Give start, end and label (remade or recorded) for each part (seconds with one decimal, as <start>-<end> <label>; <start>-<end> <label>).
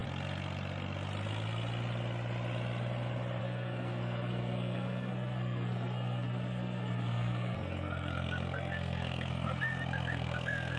0.0-3.4 recorded; 3.4-10.8 remade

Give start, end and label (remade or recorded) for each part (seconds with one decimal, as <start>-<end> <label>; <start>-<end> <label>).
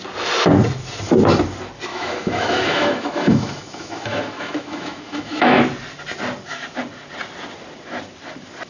0.0-1.9 recorded; 1.9-5.6 remade; 5.6-8.7 recorded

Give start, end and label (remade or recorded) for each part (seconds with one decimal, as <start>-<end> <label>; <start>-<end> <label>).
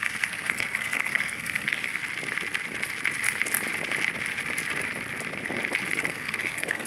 0.0-2.0 remade; 2.0-6.1 recorded; 6.1-6.9 remade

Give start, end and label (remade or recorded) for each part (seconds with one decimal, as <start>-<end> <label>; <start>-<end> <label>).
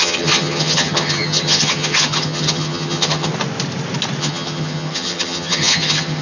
0.0-3.3 remade; 3.3-4.2 recorded; 4.2-6.2 remade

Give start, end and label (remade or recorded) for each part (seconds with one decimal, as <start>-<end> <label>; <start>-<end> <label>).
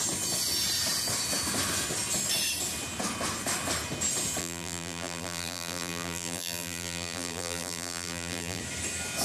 0.0-4.4 recorded; 4.4-8.6 remade; 8.6-9.2 recorded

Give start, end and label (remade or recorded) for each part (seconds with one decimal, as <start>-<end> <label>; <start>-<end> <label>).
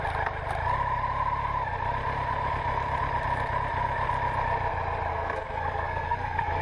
0.0-5.1 recorded; 5.1-6.6 remade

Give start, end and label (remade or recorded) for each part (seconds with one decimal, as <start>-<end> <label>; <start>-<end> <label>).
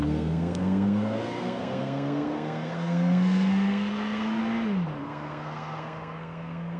0.0-4.4 remade; 4.4-5.0 recorded; 5.0-6.8 remade